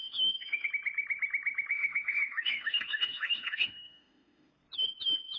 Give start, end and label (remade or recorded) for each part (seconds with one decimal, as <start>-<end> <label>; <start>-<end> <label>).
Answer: 0.0-0.7 remade; 0.7-1.7 recorded; 1.7-4.5 remade; 4.5-5.4 recorded